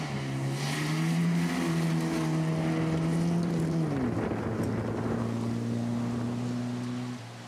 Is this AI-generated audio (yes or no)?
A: no